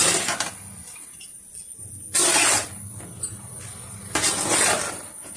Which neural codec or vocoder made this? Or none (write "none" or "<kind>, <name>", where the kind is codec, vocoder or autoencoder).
none